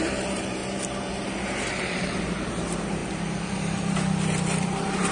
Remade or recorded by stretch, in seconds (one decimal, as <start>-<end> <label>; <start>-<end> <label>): 0.0-0.6 remade; 0.6-1.1 recorded; 1.1-5.1 remade